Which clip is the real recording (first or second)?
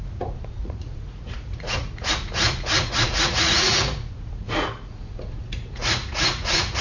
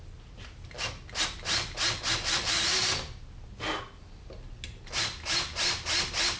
second